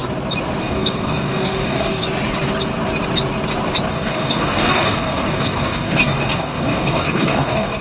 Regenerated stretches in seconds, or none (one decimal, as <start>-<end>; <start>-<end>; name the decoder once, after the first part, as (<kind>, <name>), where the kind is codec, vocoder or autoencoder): 0.6-2.0 (codec, DAC); 3.9-7.8